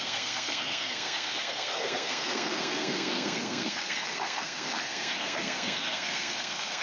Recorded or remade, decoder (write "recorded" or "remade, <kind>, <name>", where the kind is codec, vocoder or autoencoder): remade, codec, SNAC